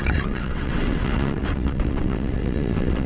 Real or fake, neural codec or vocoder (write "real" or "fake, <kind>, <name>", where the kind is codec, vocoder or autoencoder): fake, vocoder, WaveNeXt